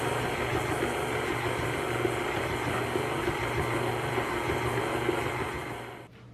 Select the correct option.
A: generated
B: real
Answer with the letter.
B